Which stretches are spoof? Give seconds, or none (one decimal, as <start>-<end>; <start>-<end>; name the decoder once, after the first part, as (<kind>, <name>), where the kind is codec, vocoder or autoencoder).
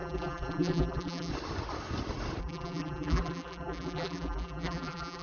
0.0-1.3 (vocoder, BigVGAN v2); 2.4-5.2